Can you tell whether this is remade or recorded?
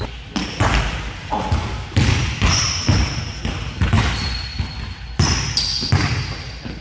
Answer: recorded